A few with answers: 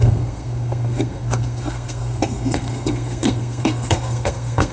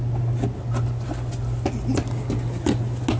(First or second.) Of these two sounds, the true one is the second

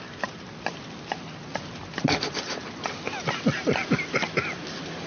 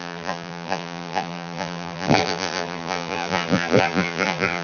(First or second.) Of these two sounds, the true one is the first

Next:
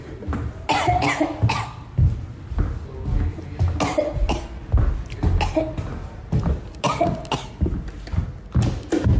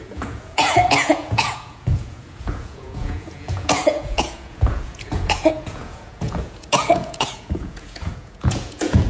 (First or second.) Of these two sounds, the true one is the first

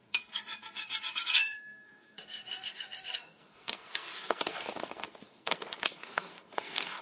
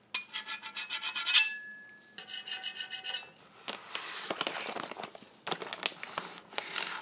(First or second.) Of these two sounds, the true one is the second